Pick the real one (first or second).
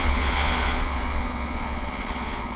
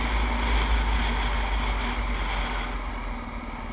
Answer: second